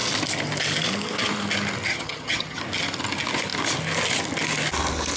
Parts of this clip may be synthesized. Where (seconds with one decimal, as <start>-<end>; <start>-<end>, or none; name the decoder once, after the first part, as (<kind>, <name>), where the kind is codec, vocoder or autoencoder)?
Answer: 1.9-2.6 (vocoder, HiFi-GAN)